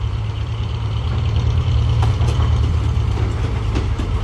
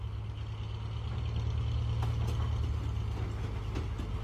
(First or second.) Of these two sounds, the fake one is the first